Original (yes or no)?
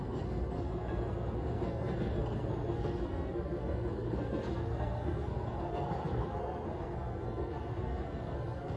no